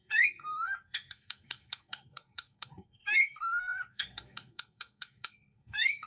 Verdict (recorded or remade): remade